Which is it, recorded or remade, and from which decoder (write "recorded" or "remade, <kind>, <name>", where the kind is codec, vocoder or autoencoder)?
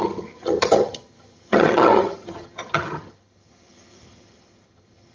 remade, vocoder, HiFi-GAN